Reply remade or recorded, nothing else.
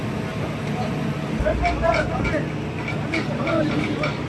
recorded